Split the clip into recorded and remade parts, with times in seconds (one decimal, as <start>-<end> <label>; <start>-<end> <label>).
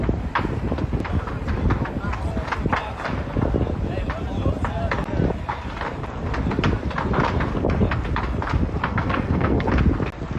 0.0-8.9 recorded; 8.9-9.8 remade; 9.8-10.4 recorded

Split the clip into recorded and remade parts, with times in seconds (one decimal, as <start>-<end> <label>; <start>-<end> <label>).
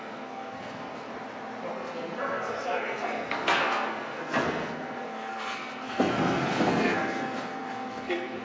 0.0-1.1 remade; 1.1-1.7 recorded; 1.7-8.4 remade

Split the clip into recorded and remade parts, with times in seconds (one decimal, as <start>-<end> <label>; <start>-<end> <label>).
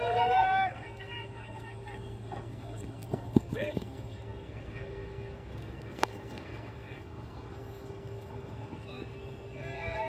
0.0-10.1 remade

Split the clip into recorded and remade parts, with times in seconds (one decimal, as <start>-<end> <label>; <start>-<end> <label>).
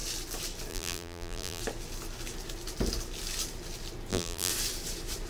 0.0-0.7 recorded; 0.7-1.6 remade; 1.6-4.1 recorded; 4.1-4.5 remade; 4.5-5.3 recorded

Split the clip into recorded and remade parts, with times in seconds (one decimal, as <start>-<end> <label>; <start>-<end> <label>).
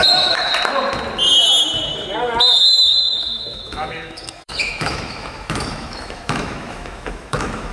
0.0-0.5 remade; 0.5-2.6 recorded; 2.6-7.7 remade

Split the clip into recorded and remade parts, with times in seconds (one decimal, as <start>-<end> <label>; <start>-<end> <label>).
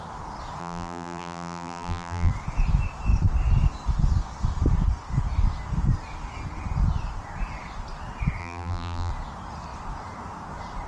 0.0-0.6 recorded; 0.6-2.3 remade; 2.3-8.4 recorded; 8.4-9.1 remade; 9.1-10.9 recorded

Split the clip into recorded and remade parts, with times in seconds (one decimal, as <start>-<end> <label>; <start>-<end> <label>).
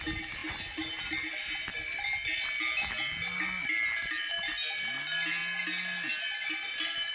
0.0-7.1 recorded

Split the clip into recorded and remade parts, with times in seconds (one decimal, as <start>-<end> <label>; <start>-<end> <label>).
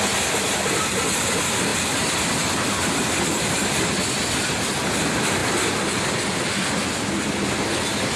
0.0-8.2 recorded